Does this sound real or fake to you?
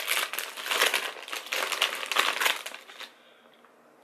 real